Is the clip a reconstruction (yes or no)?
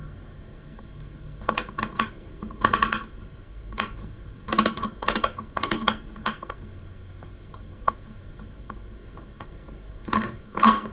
yes